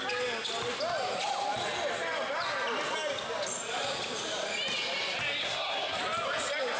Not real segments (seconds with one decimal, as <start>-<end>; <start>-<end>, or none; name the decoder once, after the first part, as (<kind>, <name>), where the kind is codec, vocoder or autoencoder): 5.4-6.0 (codec, SNAC)

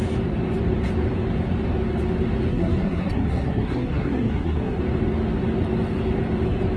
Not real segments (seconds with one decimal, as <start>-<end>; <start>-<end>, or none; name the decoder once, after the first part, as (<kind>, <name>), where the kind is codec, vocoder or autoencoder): 2.5-4.8 (codec, SNAC)